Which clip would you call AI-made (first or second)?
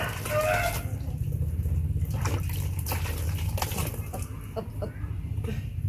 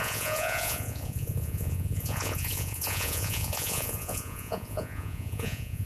second